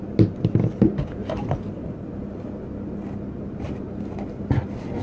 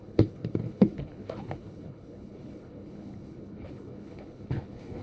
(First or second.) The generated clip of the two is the second